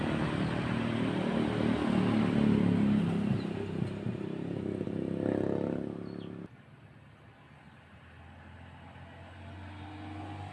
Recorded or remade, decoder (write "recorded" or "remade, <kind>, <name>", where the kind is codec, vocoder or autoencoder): recorded